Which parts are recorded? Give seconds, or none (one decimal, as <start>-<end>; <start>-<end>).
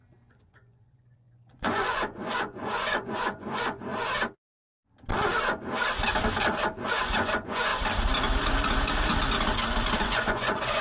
3.9-6.9; 7.7-9.9